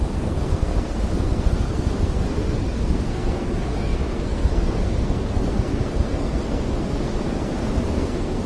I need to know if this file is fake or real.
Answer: fake